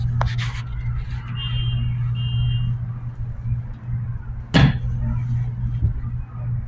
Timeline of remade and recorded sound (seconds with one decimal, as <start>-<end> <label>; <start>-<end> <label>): 0.0-6.7 recorded